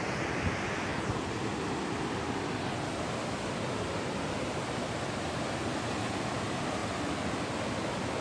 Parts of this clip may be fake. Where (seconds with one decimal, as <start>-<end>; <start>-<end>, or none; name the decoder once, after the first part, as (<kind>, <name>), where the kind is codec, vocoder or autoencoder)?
none